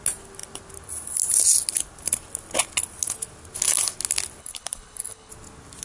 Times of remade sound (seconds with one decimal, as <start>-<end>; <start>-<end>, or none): 4.4-5.3